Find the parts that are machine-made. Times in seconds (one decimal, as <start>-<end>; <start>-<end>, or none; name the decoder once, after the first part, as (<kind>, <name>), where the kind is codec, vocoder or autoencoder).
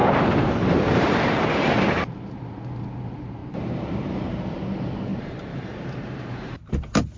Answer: 0.0-1.2 (vocoder, BigVGAN v2); 3.4-4.4; 5.1-6.7